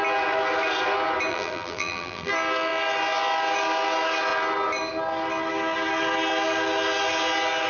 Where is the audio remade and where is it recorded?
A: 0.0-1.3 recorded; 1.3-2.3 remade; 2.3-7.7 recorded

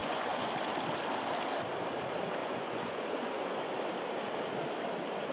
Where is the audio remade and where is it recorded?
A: 0.0-0.5 remade; 0.5-2.4 recorded; 2.4-3.7 remade; 3.7-5.3 recorded

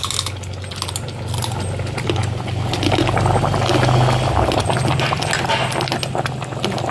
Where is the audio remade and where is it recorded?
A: 0.0-6.9 recorded

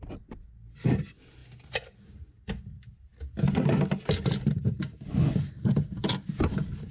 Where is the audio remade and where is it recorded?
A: 0.0-6.9 recorded

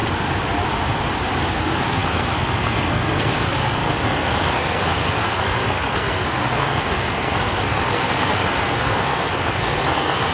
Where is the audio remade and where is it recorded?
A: 0.0-1.6 recorded; 1.6-10.3 remade